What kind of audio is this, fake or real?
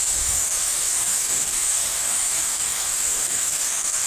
fake